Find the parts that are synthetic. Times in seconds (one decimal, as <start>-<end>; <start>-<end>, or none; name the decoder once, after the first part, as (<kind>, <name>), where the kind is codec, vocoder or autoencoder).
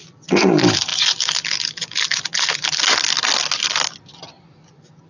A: none